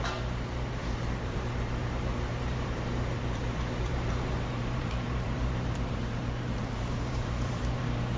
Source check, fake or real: fake